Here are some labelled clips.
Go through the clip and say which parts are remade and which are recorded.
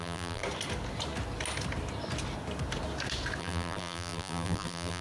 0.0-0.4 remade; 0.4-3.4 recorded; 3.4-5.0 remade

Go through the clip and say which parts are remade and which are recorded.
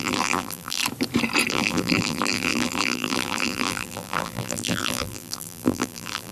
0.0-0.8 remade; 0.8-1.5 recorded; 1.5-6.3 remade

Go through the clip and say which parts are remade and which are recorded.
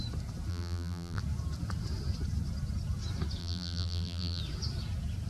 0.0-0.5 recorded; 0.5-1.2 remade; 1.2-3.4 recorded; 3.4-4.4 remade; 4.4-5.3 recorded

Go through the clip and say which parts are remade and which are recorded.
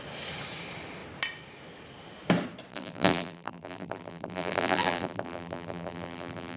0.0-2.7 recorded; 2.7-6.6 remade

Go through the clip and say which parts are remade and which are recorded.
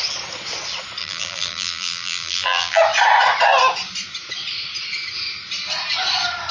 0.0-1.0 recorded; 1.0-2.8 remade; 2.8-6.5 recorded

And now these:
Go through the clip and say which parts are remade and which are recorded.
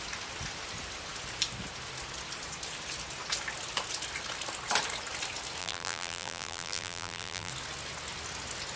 0.0-5.6 recorded; 5.6-7.5 remade; 7.5-8.8 recorded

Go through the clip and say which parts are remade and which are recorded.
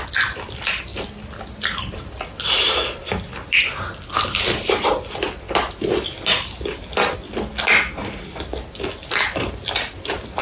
0.0-10.4 recorded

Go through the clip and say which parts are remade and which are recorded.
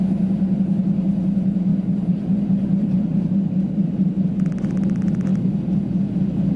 0.0-1.7 recorded; 1.7-4.1 remade; 4.1-6.6 recorded